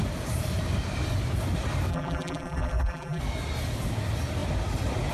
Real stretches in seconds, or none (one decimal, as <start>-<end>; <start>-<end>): 0.0-1.9; 3.2-5.1